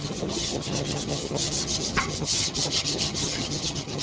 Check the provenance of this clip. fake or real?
fake